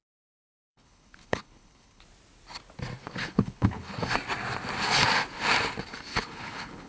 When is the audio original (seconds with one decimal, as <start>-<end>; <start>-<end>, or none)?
0.0-0.7; 2.0-3.0; 4.0-6.1